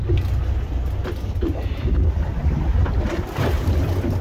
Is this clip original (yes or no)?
yes